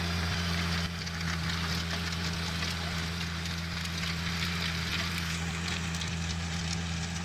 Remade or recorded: recorded